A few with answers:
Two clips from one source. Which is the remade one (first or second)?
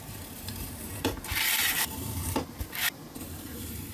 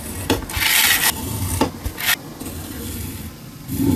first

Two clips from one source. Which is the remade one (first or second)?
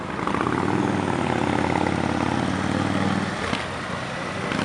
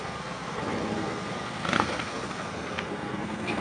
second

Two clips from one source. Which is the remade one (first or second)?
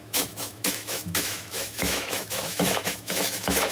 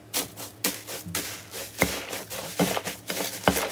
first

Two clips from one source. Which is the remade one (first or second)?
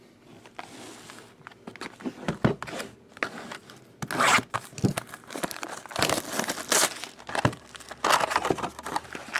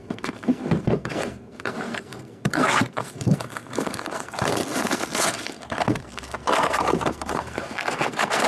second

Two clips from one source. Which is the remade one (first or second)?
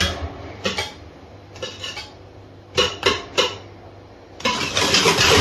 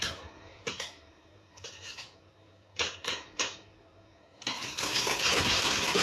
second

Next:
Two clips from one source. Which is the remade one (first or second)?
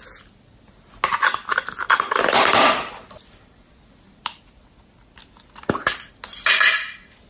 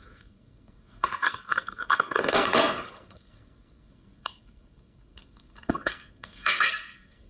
second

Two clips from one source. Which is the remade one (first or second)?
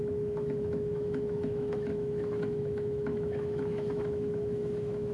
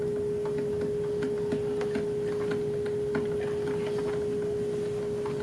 first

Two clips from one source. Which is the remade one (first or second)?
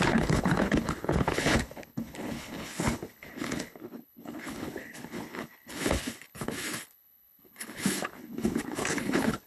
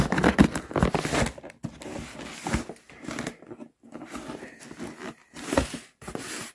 first